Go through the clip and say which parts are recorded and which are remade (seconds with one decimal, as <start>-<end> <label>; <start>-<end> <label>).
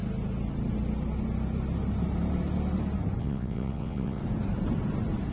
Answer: 0.0-3.2 recorded; 3.2-4.2 remade; 4.2-5.3 recorded